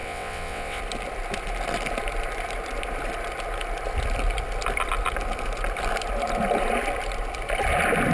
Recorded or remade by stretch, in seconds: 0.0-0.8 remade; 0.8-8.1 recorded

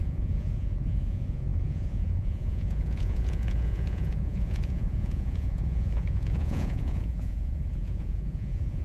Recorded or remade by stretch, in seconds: 0.0-8.8 remade

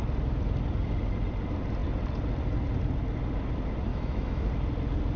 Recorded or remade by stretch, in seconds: 0.0-3.9 recorded; 3.9-4.5 remade; 4.5-5.2 recorded